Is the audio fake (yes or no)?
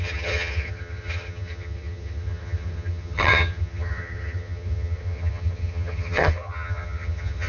yes